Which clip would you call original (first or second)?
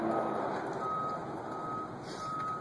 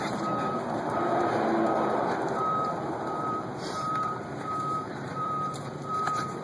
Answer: first